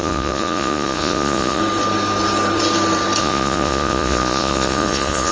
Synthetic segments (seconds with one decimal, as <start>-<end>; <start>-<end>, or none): 0.0-1.6; 3.2-5.3